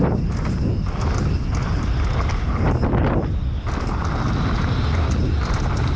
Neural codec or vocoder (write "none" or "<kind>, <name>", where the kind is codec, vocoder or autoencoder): none